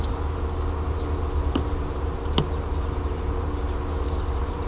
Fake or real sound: real